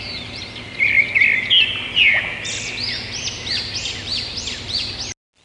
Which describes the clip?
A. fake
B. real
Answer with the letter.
B